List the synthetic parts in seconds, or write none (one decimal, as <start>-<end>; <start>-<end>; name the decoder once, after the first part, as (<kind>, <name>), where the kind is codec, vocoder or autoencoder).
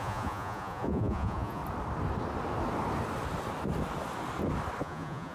0.0-1.6 (vocoder, Vocos); 4.8-5.3